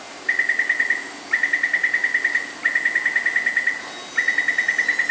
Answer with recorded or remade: recorded